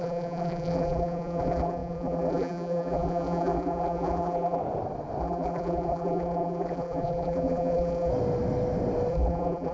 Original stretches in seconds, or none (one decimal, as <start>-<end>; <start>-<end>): 4.6-5.2; 8.1-9.1